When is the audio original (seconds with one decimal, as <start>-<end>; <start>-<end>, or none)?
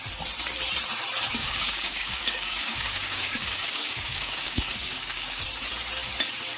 0.0-1.4; 5.4-6.6